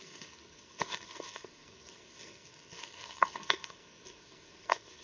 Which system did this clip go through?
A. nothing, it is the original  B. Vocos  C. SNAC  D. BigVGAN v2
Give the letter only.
C